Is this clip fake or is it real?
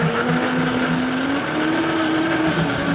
real